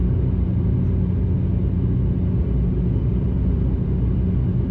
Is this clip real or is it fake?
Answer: real